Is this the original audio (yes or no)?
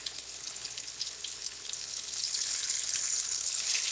no